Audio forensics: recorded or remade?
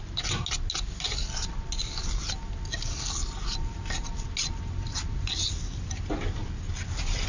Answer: recorded